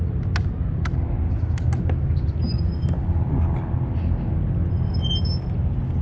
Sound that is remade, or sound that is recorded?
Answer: recorded